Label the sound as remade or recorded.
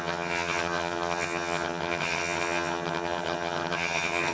remade